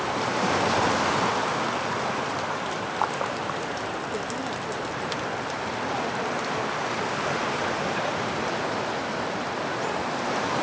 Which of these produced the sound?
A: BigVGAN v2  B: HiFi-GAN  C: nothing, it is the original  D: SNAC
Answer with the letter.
C